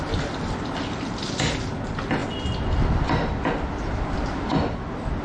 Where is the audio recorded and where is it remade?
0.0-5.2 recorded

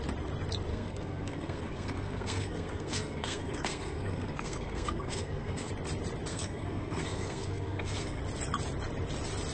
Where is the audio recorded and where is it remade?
0.0-0.7 recorded; 0.7-5.7 remade; 5.7-6.3 recorded; 6.3-8.2 remade; 8.2-9.5 recorded

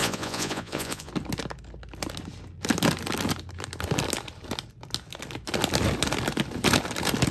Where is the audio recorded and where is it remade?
0.0-1.1 remade; 1.1-7.3 recorded

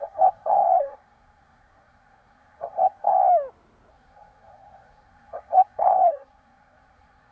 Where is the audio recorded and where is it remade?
0.0-3.2 remade; 3.2-3.9 recorded; 3.9-7.3 remade